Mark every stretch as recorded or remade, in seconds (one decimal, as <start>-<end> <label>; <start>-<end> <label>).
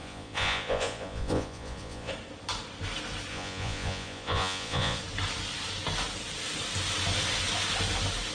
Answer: 0.0-2.1 remade; 2.1-3.3 recorded; 3.3-5.0 remade; 5.0-8.3 recorded